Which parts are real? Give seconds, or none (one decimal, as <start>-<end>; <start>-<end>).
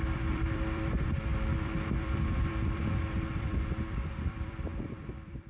none